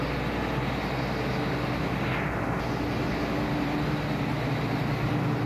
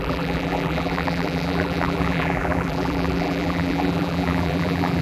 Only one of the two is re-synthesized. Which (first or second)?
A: second